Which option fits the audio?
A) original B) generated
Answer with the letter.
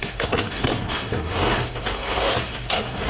B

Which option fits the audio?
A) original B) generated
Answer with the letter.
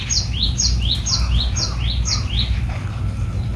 A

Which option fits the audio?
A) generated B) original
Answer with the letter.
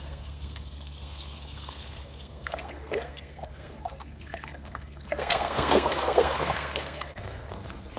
A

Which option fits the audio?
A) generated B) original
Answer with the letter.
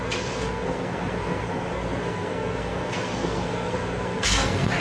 A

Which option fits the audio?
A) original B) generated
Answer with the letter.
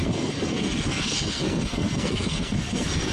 B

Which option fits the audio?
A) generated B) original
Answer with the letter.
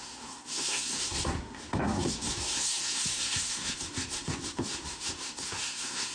A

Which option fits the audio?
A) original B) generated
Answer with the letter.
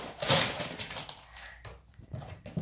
A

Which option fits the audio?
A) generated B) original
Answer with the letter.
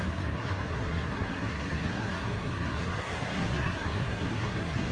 A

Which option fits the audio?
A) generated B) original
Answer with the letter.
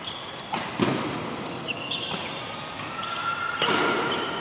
B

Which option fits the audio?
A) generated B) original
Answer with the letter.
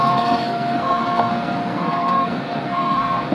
A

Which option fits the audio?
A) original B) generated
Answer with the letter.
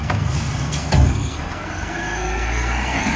B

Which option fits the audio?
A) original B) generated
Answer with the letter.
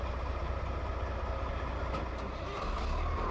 A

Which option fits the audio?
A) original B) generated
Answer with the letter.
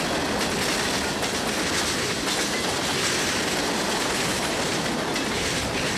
A